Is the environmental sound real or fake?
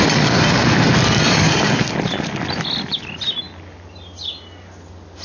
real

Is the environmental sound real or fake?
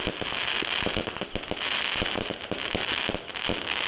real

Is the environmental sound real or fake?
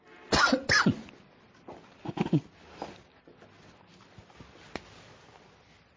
real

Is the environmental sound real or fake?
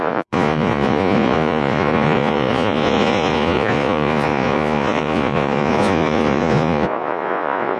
fake